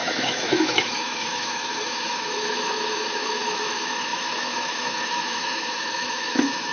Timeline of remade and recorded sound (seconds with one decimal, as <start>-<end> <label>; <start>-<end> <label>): 0.0-6.7 remade